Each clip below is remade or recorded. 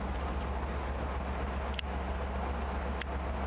recorded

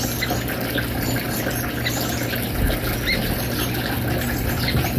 recorded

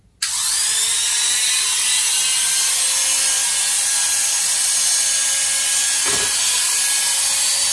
recorded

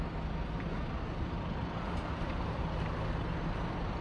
recorded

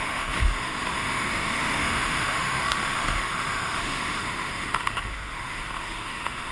remade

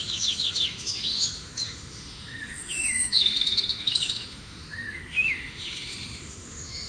remade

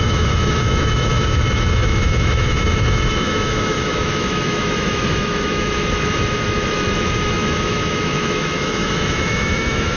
remade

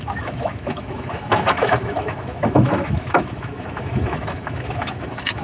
remade